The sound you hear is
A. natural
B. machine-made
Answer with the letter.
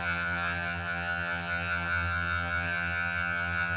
B